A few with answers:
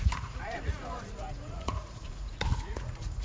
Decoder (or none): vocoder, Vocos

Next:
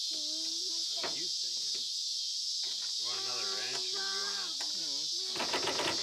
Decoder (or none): none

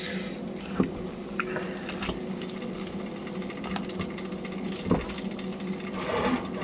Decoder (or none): none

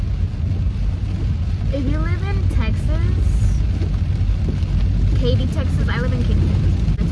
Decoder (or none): none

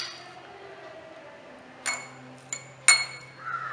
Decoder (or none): none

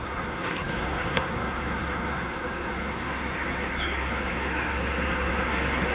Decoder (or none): codec, SNAC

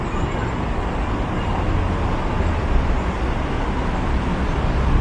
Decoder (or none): none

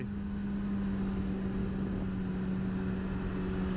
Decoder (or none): none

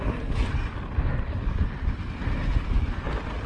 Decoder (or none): none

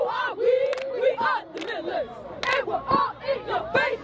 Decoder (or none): none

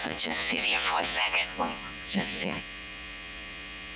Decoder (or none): vocoder, Vocos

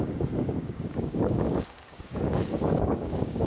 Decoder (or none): codec, DAC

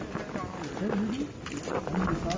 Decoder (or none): none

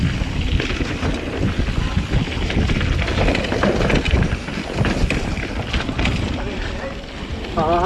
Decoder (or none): none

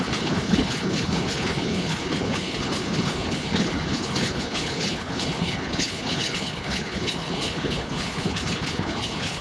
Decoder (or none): codec, HILCodec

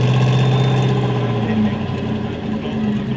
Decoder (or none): none